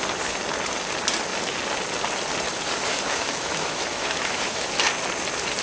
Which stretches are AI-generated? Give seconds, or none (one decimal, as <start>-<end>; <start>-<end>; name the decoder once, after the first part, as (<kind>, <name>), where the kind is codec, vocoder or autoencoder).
2.9-4.7 (autoencoder, DAC-VAE)